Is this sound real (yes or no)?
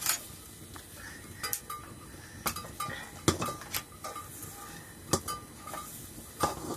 yes